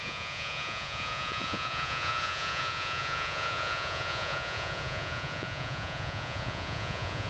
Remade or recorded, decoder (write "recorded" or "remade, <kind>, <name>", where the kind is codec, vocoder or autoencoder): remade, vocoder, Vocos